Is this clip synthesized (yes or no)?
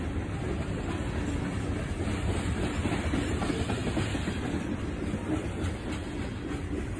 no